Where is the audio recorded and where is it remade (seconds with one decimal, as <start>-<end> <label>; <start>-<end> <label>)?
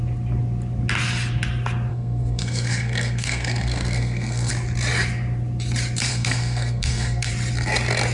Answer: 0.0-1.9 recorded; 1.9-4.5 remade; 4.5-6.1 recorded; 6.1-7.3 remade; 7.3-8.1 recorded